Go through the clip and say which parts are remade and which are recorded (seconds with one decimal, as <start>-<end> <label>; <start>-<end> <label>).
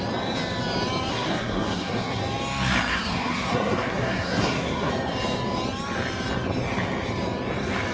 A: 0.0-1.1 recorded; 1.1-2.2 remade; 2.2-2.9 recorded; 2.9-4.9 remade; 4.9-7.9 recorded